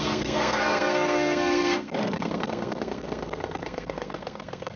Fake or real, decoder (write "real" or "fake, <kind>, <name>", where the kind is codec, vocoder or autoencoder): fake, codec, SNAC